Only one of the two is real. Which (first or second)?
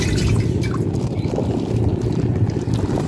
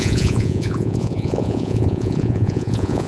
first